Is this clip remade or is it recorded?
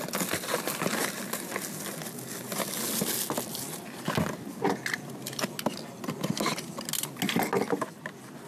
recorded